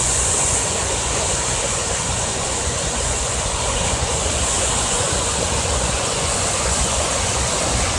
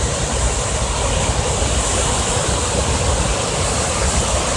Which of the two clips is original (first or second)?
second